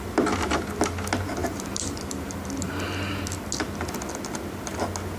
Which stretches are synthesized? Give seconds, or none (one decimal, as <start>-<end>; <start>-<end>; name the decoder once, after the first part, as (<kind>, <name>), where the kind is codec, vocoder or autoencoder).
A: 1.4-2.7 (vocoder, BigVGAN v2)